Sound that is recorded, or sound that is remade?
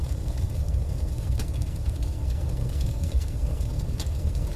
remade